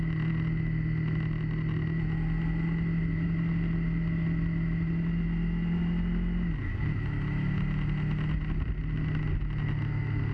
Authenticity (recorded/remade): recorded